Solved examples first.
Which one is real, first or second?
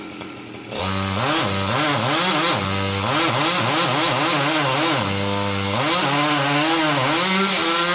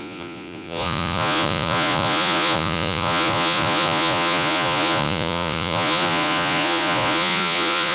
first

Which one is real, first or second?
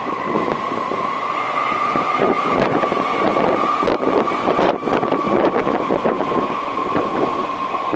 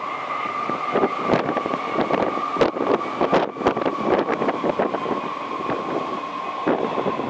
second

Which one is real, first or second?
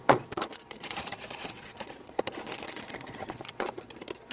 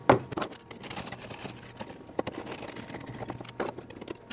second